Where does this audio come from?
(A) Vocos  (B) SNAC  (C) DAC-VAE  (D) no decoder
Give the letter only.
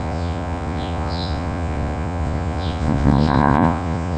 A